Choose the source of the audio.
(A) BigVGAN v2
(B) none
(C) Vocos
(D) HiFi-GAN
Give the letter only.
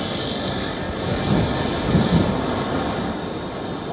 B